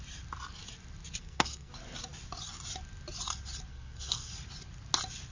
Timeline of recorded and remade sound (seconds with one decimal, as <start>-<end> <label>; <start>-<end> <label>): 0.0-1.2 recorded; 1.2-1.7 remade; 1.7-3.7 recorded; 3.7-4.3 remade; 4.3-5.3 recorded